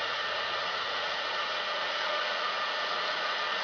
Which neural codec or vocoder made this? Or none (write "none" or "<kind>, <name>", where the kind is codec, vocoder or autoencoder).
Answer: vocoder, Vocos